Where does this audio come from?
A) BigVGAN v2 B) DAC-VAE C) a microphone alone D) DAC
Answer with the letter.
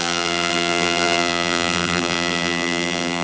A